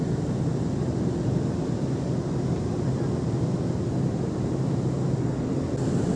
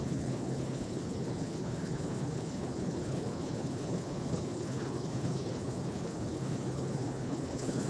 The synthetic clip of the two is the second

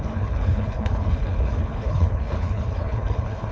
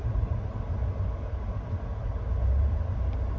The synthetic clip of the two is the first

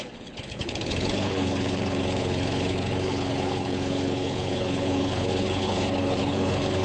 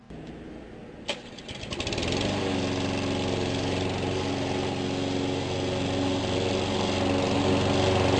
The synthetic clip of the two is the first